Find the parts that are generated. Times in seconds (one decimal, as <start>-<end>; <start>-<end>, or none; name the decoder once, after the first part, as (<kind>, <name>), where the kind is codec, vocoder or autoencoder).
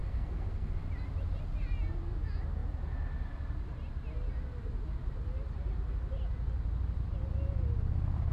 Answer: 0.0-0.7 (codec, SNAC)